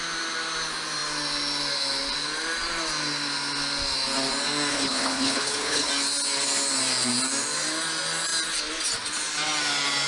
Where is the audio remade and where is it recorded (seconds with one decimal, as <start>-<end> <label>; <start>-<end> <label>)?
0.0-4.7 recorded; 4.7-5.9 remade; 5.9-10.1 recorded